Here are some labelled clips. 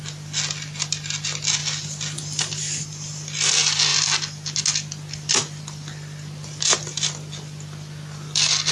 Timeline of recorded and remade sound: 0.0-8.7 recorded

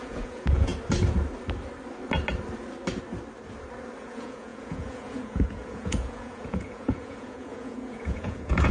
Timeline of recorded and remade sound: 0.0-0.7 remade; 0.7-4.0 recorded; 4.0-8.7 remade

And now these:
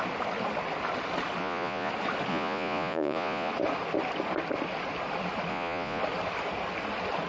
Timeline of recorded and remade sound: 0.0-1.4 recorded; 1.4-1.9 remade; 1.9-2.3 recorded; 2.3-3.5 remade; 3.5-5.5 recorded; 5.5-6.0 remade; 6.0-7.3 recorded

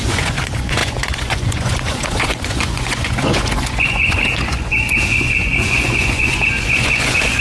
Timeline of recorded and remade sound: 0.0-7.4 remade

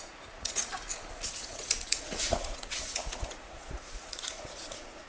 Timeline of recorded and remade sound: 0.0-0.7 remade; 0.7-1.5 recorded; 1.5-5.1 remade